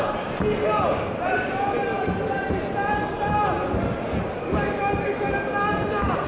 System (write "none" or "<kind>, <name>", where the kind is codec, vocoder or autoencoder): none